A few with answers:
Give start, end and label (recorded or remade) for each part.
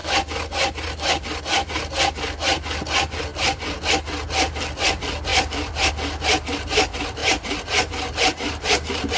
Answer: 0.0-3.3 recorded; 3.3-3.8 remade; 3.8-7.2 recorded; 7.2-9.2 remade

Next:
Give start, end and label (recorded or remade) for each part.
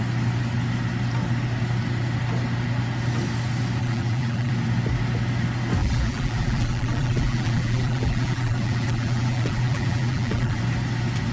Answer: 0.0-3.8 recorded; 3.8-4.5 remade; 4.5-5.8 recorded; 5.8-10.6 remade; 10.6-11.3 recorded